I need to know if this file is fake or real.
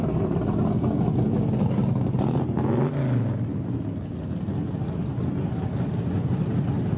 real